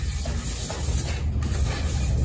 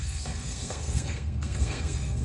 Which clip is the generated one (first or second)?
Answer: second